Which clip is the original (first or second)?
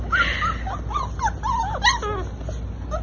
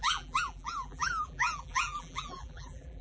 first